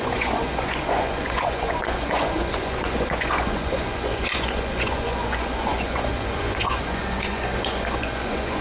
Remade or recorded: remade